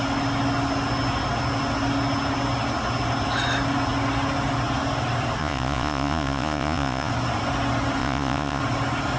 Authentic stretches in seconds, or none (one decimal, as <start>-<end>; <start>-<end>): 0.0-5.4; 7.1-8.0; 8.6-9.2